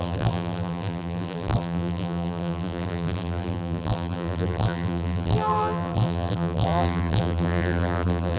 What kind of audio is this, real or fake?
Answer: fake